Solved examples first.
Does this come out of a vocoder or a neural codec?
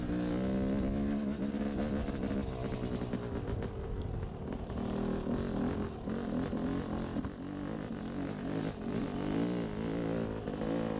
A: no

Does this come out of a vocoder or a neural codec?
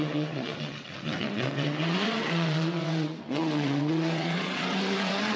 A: yes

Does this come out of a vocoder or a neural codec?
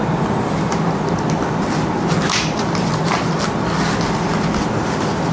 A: no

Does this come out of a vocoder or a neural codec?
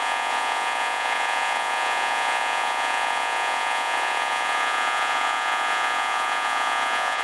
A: yes